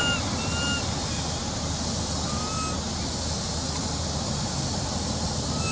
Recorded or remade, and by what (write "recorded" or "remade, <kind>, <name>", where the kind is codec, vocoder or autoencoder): recorded